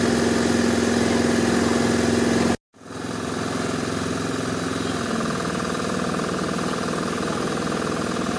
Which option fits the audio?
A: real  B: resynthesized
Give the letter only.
A